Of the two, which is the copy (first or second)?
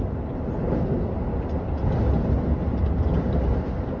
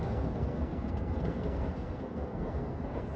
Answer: second